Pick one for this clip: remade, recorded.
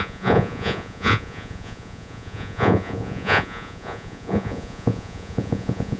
remade